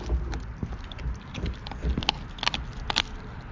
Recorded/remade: recorded